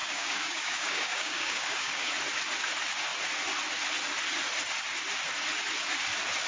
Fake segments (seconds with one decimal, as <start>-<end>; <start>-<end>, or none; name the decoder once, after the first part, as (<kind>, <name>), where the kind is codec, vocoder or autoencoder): 0.0-2.1 (codec, DAC)